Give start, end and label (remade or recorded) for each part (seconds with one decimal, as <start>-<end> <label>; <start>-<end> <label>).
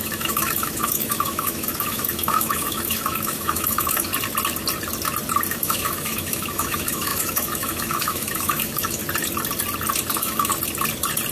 0.0-4.1 remade; 4.1-5.5 recorded; 5.5-9.0 remade; 9.0-10.1 recorded; 10.1-10.5 remade; 10.5-11.3 recorded